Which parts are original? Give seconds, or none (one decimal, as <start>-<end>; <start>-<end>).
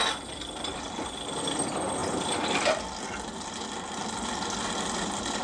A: 0.0-5.4